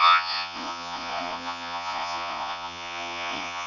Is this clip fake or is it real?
fake